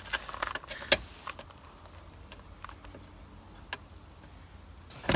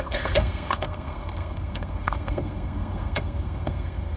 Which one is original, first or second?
first